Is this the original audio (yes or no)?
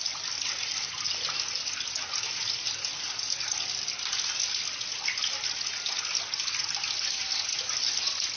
yes